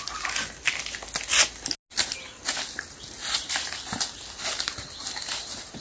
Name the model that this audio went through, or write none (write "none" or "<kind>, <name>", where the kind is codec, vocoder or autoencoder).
none